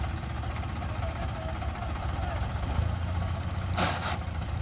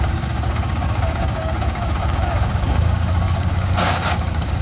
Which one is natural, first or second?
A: first